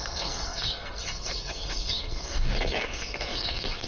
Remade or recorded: remade